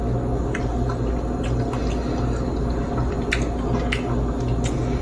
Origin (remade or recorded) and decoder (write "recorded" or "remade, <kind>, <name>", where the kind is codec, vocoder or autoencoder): recorded